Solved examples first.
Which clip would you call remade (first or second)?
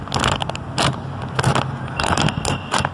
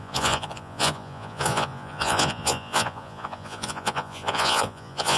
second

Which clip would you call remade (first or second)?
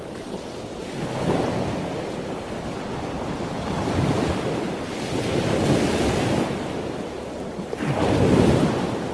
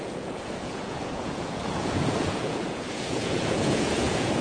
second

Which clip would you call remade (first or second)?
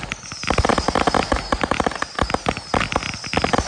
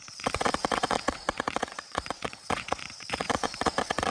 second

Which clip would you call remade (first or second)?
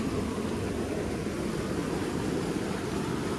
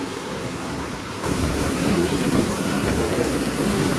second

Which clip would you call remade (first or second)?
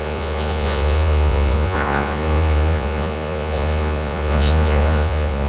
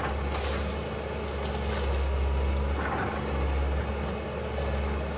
first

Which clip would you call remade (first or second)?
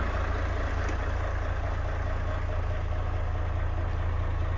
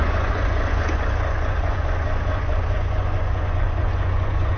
second